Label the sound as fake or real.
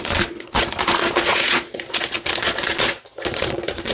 fake